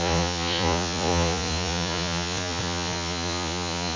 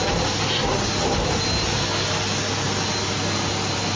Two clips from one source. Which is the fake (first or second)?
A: first